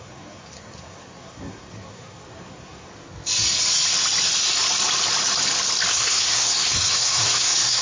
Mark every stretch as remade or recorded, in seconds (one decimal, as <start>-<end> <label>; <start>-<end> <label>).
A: 0.0-2.9 remade; 2.9-5.9 recorded; 5.9-7.8 remade